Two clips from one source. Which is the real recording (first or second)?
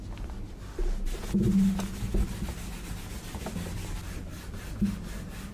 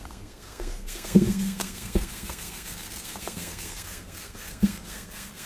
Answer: first